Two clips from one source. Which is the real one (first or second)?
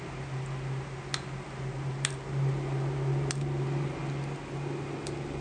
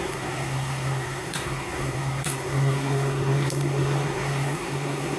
first